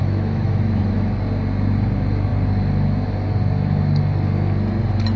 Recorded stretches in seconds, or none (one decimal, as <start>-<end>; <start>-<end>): 1.0-5.2